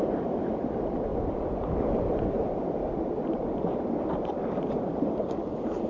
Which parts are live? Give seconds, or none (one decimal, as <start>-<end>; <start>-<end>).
0.0-0.6; 1.1-1.7; 2.8-4.1